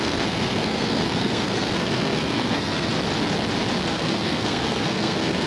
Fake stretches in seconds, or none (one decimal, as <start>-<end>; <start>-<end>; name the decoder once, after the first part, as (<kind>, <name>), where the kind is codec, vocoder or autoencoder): 0.0-2.9 (codec, SNAC); 3.9-5.5